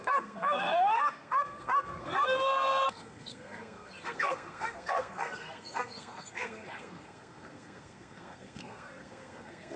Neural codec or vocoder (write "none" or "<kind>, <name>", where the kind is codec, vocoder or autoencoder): codec, SNAC